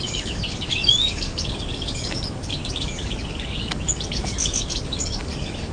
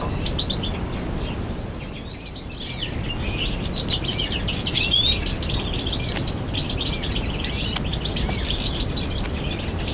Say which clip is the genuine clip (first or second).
second